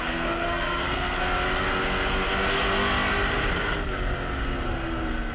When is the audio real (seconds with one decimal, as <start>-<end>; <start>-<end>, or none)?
1.2-4.4